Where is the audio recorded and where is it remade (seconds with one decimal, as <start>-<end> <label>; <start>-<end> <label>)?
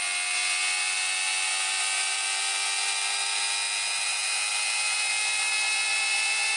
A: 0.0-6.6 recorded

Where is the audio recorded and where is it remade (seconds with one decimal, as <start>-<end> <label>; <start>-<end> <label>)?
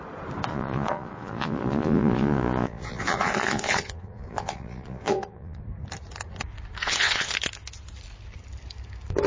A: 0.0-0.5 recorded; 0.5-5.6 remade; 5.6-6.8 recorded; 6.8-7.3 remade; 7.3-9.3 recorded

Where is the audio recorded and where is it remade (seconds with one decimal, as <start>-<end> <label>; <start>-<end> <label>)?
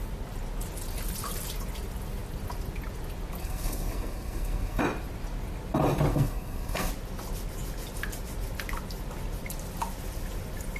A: 0.0-3.4 recorded; 3.4-4.8 remade; 4.8-6.1 recorded; 6.1-6.9 remade; 6.9-10.8 recorded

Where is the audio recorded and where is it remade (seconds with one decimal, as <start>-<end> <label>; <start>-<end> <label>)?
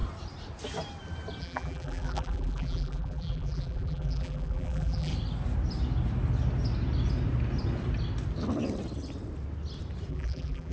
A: 0.0-1.4 recorded; 1.4-5.1 remade; 5.1-10.1 recorded; 10.1-10.7 remade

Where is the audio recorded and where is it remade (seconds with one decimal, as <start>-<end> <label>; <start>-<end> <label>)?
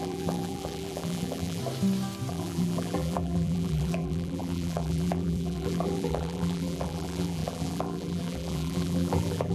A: 0.0-1.6 remade; 1.6-2.3 recorded; 2.3-9.5 remade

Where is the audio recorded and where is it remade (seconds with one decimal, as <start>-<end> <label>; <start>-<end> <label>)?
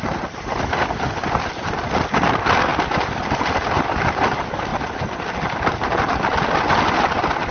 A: 0.0-2.7 recorded; 2.7-3.5 remade; 3.5-4.7 recorded; 4.7-5.7 remade; 5.7-7.5 recorded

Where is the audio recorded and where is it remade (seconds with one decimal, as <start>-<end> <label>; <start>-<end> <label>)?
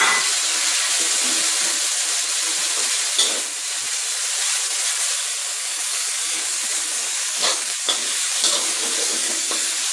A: 0.0-5.4 recorded; 5.4-9.9 remade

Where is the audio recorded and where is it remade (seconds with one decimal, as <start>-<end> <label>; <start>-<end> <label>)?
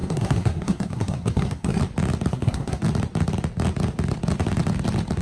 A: 0.0-1.8 remade; 1.8-2.3 recorded; 2.3-2.8 remade; 2.8-5.2 recorded